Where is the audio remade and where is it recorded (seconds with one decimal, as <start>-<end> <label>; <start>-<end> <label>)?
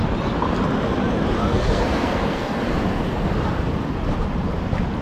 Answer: 0.0-1.5 recorded; 1.5-2.6 remade; 2.6-5.0 recorded